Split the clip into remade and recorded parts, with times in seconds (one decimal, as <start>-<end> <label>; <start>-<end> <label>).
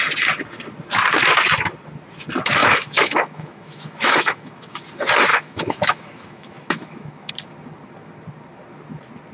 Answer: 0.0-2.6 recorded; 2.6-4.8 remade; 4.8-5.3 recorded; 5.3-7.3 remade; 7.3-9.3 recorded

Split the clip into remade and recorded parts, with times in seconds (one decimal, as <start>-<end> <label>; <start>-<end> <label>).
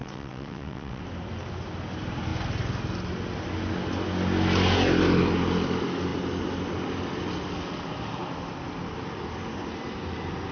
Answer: 0.0-1.0 remade; 1.0-10.5 recorded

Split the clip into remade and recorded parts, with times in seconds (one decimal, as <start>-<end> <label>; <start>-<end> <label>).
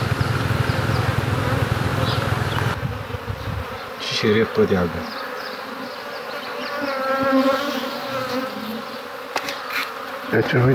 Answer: 0.0-10.7 recorded